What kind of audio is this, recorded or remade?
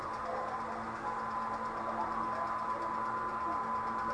recorded